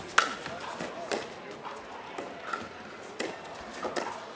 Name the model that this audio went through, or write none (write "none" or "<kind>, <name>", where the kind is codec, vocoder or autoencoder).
none